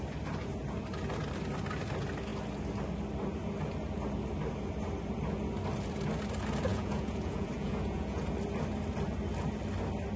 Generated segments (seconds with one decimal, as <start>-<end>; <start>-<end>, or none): 6.7-8.3